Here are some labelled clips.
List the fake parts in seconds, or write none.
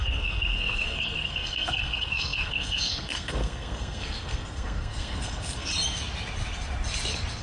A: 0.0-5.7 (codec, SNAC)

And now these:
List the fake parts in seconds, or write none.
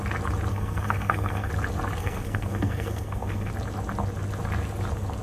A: 0.5-1.5 (codec, SNAC); 2.0-3.5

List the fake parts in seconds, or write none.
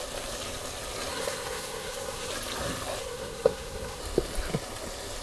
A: 1.1-2.3 (codec, SNAC); 3.0-4.0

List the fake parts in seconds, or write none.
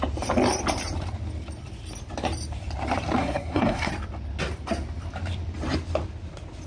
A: 3.2-3.9 (codec, SNAC)